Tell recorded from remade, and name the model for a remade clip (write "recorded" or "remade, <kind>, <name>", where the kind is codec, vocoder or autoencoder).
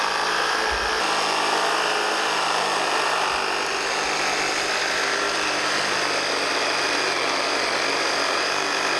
recorded